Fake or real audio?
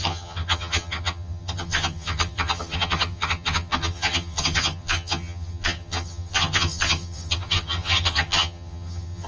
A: fake